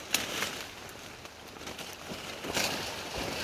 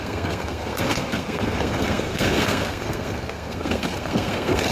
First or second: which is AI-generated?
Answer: second